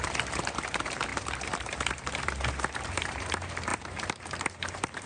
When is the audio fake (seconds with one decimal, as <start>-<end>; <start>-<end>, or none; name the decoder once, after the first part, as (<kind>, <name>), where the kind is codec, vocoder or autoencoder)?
0.0-5.1 (vocoder, BigVGAN v2)